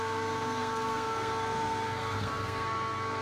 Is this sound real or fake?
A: fake